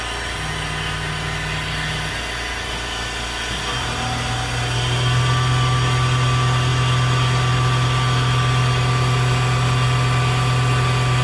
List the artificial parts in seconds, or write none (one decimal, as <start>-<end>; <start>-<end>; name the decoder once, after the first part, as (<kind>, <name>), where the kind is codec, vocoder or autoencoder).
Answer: none